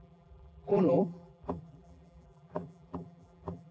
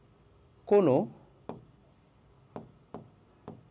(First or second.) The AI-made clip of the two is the first